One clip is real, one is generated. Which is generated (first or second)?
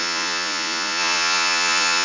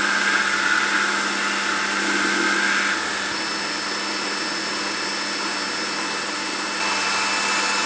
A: first